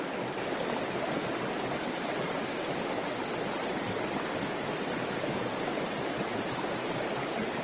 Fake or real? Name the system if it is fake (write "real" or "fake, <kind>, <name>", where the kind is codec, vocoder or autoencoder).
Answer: real